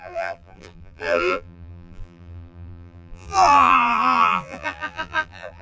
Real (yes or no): no